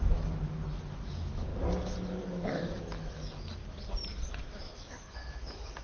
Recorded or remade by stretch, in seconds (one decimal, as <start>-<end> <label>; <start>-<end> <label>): 0.0-1.5 remade; 1.5-2.2 recorded; 2.2-3.6 remade; 3.6-4.4 recorded; 4.4-5.8 remade